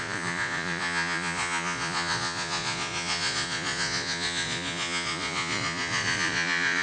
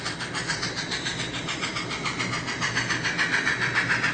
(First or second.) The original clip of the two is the second